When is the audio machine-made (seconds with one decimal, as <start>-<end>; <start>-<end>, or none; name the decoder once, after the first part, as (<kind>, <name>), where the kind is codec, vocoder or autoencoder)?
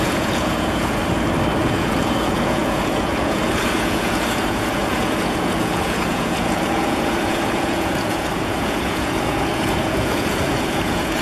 0.0-1.0 (vocoder, Vocos); 1.6-11.2